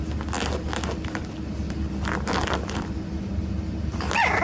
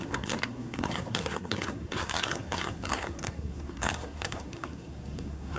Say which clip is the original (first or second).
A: first